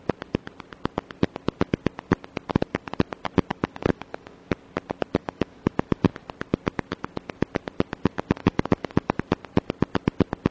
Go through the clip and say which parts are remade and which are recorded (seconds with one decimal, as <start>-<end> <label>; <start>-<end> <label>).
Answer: 0.0-3.5 recorded; 3.5-4.5 remade; 4.5-5.2 recorded; 5.2-6.1 remade; 6.1-8.4 recorded; 8.4-9.2 remade; 9.2-10.5 recorded